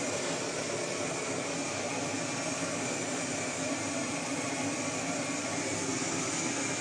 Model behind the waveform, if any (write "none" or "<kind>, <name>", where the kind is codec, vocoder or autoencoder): none